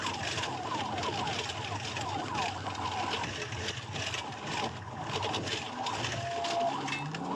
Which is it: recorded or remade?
recorded